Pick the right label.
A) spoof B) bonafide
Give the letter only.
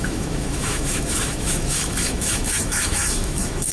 A